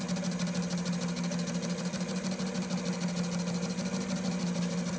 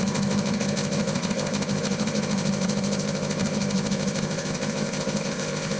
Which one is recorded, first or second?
first